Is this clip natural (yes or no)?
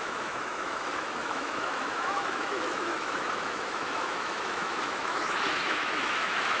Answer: no